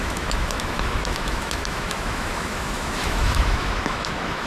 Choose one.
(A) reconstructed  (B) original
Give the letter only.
A